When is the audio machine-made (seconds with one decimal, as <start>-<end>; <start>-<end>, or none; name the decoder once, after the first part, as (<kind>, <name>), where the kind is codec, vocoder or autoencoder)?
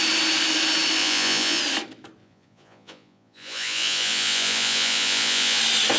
1.0-1.6 (vocoder, Vocos); 2.2-5.6